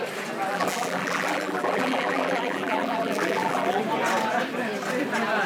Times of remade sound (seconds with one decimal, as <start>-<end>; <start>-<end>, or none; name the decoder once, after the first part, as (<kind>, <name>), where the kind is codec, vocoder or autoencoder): 0.5-3.8 (vocoder, BigVGAN v2)